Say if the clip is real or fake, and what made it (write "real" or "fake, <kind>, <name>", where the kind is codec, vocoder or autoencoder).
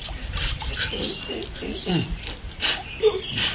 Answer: fake, vocoder, BigVGAN v2